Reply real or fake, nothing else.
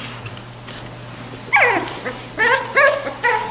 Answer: real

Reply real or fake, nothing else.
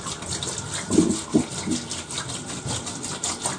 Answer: real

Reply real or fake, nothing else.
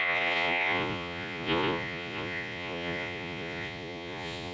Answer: fake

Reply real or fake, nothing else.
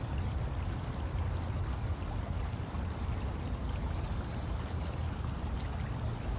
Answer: real